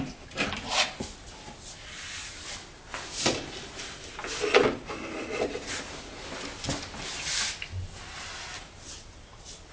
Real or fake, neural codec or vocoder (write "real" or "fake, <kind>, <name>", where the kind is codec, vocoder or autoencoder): real